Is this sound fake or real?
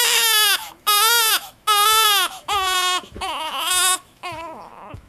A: fake